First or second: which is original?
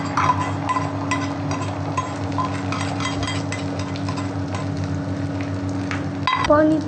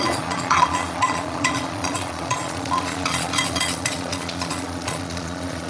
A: first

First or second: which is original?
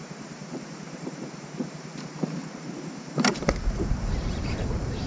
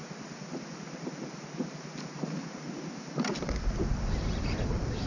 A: second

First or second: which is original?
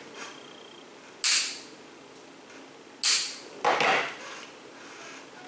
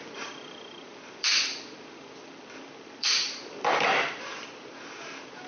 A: first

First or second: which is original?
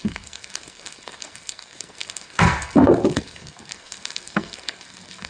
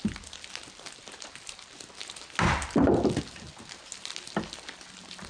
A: second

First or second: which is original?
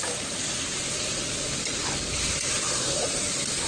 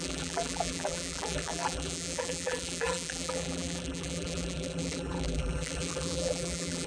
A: first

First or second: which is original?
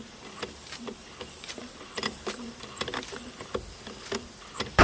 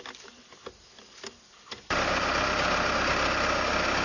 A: second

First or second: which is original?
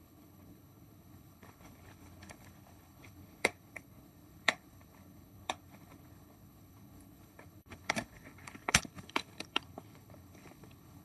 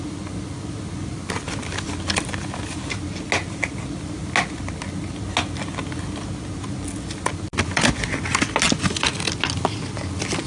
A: second